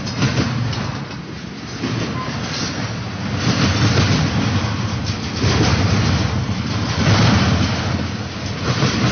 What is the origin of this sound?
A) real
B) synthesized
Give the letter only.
A